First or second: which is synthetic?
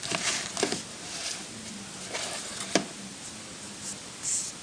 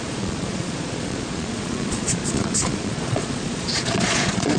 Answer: second